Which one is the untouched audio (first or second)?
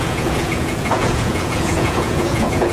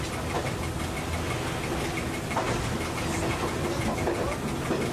second